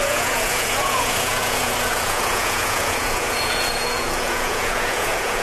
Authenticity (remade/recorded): remade